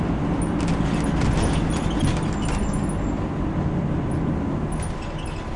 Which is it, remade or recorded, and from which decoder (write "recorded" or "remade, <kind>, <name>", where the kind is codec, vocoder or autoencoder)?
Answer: recorded